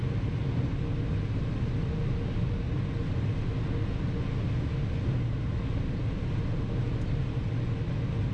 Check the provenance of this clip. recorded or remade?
recorded